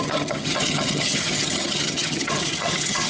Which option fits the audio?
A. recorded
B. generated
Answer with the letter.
B